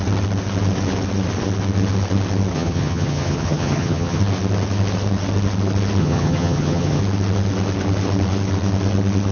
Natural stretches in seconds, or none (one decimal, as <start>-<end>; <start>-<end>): 0.0-2.5; 4.2-6.0; 7.0-9.3

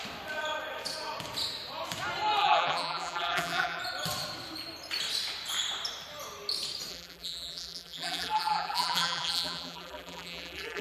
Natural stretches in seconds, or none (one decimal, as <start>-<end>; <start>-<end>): 0.0-2.4; 3.8-6.9

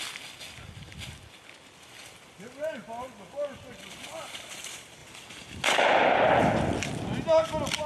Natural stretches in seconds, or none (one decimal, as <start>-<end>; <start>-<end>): 0.0-7.9

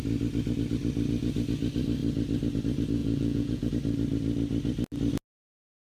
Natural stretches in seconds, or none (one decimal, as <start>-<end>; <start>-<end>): 0.0-3.0; 3.7-5.9

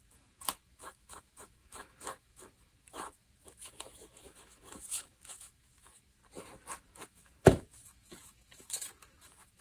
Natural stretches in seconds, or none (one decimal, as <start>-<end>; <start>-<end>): 6.2-6.8

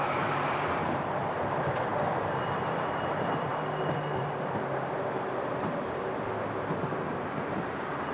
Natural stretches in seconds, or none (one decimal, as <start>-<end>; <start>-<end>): 0.0-8.1